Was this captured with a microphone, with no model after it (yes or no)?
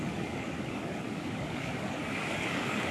no